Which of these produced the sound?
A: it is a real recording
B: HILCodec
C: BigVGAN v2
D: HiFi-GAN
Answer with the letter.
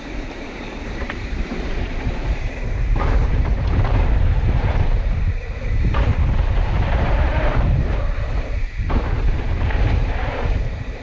C